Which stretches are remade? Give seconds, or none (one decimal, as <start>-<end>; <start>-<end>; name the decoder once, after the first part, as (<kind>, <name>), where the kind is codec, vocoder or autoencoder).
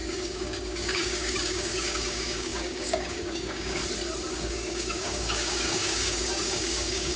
0.0-3.8 (codec, DAC); 4.3-7.2